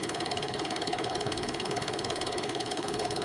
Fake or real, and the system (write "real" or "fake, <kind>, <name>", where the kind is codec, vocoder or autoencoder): fake, codec, HILCodec